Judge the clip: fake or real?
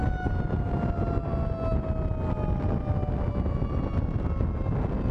real